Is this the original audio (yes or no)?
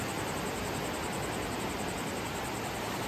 yes